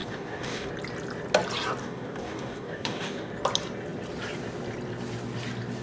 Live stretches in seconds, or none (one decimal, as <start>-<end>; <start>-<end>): 0.7-1.8; 3.3-5.8